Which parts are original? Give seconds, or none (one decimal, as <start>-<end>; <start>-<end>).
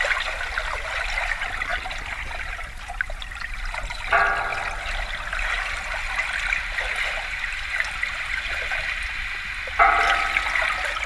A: 0.0-11.1